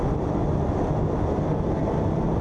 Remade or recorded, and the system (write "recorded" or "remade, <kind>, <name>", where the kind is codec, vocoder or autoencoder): recorded